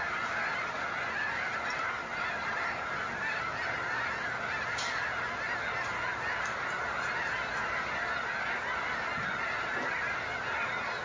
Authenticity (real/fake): real